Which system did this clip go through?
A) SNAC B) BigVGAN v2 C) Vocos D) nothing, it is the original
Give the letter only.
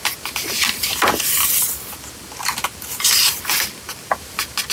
D